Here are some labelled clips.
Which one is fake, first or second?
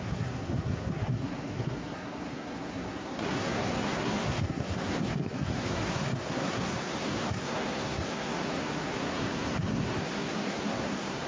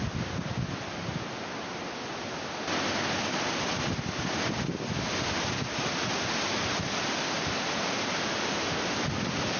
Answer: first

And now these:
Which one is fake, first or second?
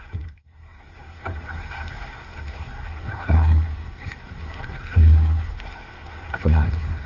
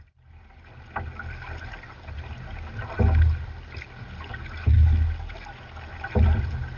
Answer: first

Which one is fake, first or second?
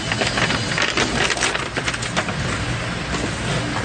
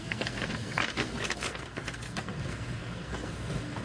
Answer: second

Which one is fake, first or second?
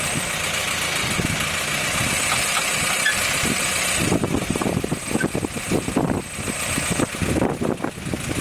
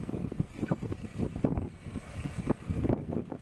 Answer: second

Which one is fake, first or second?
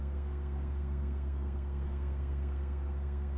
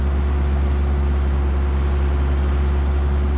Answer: first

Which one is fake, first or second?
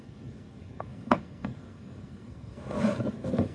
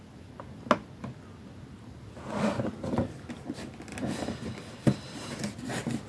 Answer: first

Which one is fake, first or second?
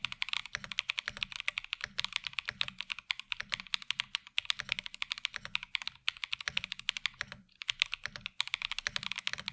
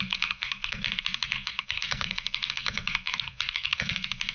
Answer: second